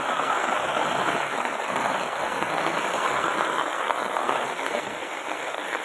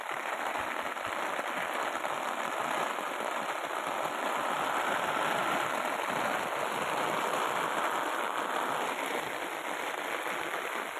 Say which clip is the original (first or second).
second